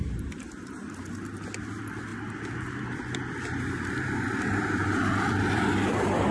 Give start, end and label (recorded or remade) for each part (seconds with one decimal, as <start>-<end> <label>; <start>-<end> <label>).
0.0-2.1 recorded; 2.1-6.3 remade